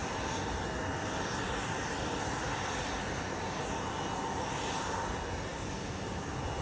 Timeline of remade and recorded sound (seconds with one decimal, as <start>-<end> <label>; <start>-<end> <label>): 0.0-6.6 recorded